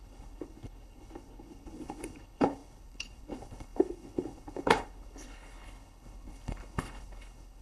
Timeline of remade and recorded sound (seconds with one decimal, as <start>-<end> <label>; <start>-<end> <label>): 0.0-7.6 remade